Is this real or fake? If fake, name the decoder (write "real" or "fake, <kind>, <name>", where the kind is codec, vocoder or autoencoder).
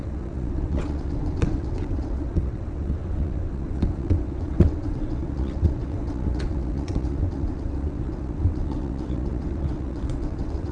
fake, vocoder, WaveNeXt